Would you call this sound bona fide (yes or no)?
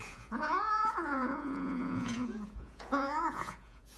no